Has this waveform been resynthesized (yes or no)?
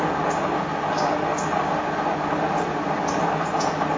no